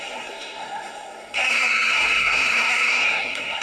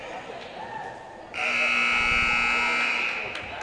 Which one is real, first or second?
second